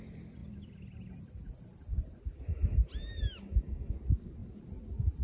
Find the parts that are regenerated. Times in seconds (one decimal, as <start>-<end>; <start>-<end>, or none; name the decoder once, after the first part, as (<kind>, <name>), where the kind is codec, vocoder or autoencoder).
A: none